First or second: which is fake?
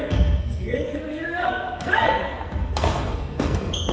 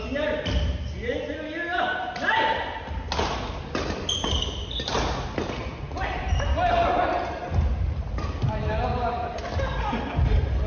first